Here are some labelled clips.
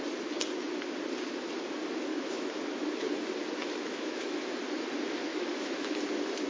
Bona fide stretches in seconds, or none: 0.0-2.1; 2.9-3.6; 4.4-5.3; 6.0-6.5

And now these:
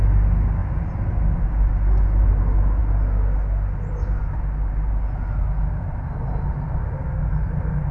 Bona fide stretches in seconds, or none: 0.0-7.9

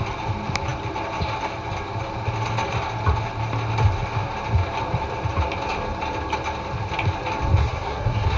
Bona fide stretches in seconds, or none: 0.0-7.6

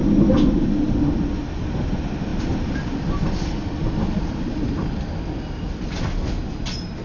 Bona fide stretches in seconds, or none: 0.0-7.0

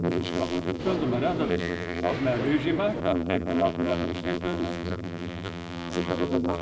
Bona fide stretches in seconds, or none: 0.8-1.5; 2.1-3.0